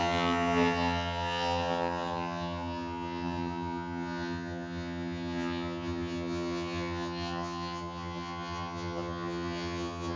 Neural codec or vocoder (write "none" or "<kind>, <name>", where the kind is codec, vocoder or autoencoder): vocoder, HiFi-GAN